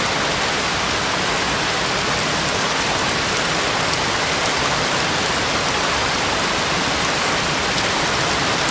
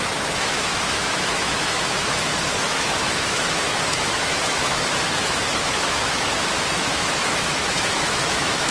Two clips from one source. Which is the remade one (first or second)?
second